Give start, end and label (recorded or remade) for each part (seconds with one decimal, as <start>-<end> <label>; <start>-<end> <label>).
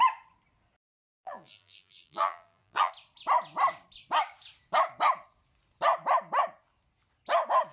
0.0-0.9 recorded; 0.9-2.9 remade; 2.9-7.7 recorded